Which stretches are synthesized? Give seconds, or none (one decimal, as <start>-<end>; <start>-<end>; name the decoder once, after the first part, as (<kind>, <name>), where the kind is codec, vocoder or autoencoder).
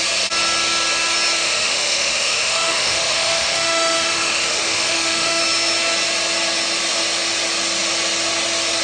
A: 1.4-5.4 (autoencoder, DAC-VAE)